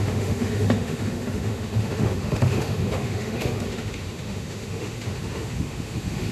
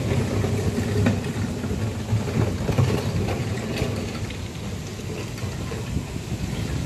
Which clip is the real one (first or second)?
second